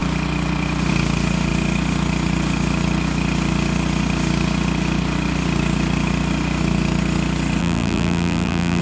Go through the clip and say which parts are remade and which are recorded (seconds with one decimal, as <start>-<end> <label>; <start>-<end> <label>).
0.0-7.6 recorded; 7.6-8.8 remade